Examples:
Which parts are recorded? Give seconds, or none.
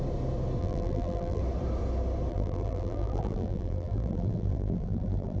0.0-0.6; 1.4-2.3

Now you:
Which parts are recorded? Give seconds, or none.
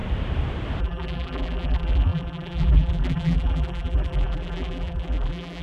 0.0-0.8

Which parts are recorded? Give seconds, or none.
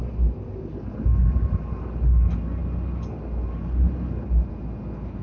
0.0-1.2; 1.9-5.2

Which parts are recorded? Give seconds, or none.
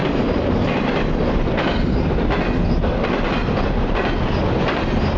1.5-3.4; 4.1-5.2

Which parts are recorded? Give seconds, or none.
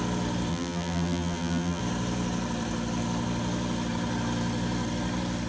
0.0-0.5; 1.8-5.5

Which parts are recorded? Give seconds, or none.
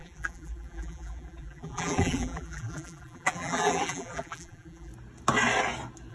4.9-6.1